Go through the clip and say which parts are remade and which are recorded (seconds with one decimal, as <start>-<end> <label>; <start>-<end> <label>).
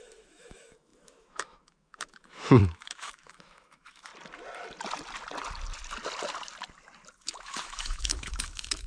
0.0-4.1 remade; 4.1-7.1 recorded; 7.1-8.9 remade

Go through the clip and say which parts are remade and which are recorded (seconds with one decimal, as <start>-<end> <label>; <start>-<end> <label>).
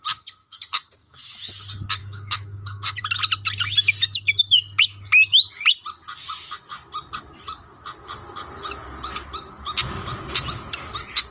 0.0-0.4 recorded; 0.4-1.5 remade; 1.5-2.0 recorded; 2.0-3.0 remade; 3.0-11.3 recorded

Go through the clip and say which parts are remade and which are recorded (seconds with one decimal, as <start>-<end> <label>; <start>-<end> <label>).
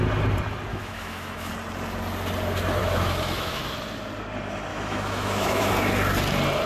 0.0-0.7 recorded; 0.7-1.5 remade; 1.5-2.8 recorded; 2.8-3.6 remade; 3.6-4.7 recorded; 4.7-5.7 remade; 5.7-6.7 recorded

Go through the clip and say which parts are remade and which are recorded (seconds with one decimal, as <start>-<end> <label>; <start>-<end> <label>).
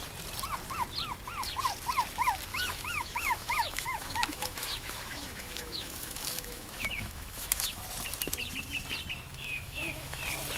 0.0-2.5 recorded; 2.5-7.8 remade; 7.8-9.3 recorded; 9.3-10.2 remade; 10.2-10.6 recorded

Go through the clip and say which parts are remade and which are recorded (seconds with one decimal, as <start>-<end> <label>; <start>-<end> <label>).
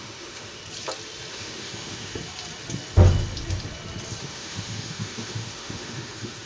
0.0-0.6 remade; 0.6-1.3 recorded; 1.3-2.1 remade; 2.1-4.2 recorded; 4.2-6.5 remade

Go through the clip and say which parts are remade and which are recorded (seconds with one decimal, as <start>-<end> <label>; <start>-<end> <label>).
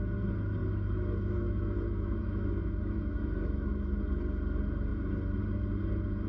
0.0-0.6 recorded; 0.6-4.0 remade; 4.0-6.3 recorded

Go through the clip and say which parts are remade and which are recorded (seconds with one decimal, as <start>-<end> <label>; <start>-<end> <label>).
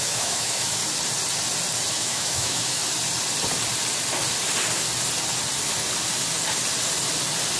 0.0-0.8 remade; 0.8-1.9 recorded; 1.9-2.8 remade; 2.8-7.6 recorded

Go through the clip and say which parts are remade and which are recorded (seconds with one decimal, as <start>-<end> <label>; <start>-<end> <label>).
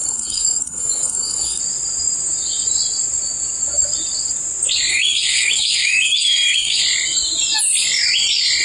0.0-1.6 remade; 1.6-4.9 recorded; 4.9-6.8 remade; 6.8-8.6 recorded